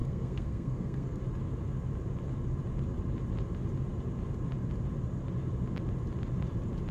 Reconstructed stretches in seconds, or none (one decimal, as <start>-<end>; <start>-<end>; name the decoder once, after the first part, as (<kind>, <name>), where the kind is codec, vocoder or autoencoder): 0.0-1.2 (codec, SNAC)